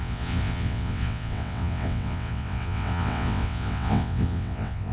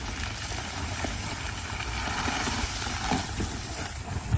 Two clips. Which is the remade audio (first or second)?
first